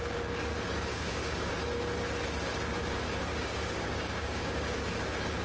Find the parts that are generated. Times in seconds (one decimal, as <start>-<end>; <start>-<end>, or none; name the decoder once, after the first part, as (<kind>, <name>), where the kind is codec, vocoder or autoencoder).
0.9-1.6 (codec, DAC); 3.3-4.8